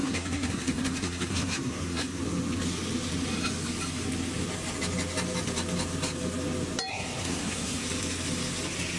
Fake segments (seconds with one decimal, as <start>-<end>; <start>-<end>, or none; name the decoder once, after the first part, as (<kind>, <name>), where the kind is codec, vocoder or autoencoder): 0.0-2.2 (codec, SNAC); 6.9-7.8